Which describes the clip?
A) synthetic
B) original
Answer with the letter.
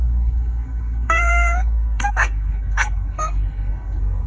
A